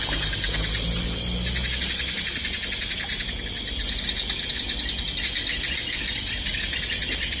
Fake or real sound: real